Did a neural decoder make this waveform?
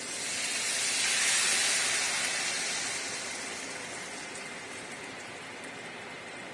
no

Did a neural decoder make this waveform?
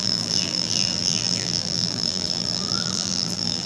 yes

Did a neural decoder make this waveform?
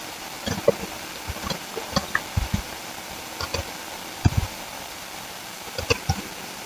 no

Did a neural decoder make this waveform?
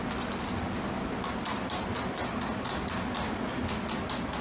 no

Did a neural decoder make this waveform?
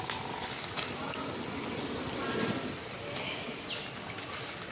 no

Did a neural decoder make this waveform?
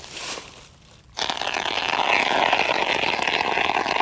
yes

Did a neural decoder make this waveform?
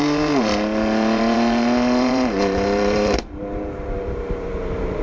yes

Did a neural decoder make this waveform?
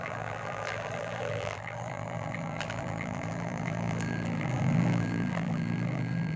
yes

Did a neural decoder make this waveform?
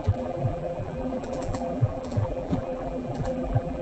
yes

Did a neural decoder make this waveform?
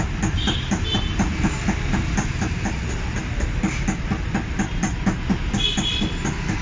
no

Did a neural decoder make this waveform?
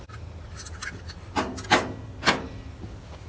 no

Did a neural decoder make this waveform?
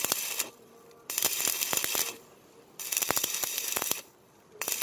yes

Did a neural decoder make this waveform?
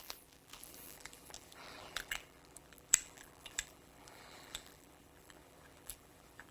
yes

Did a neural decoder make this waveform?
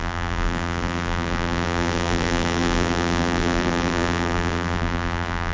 yes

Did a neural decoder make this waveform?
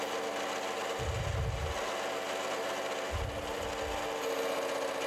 no